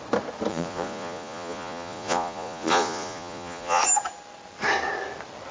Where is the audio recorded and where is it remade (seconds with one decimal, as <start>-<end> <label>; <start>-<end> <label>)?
0.0-0.5 recorded; 0.5-3.8 remade; 3.8-5.5 recorded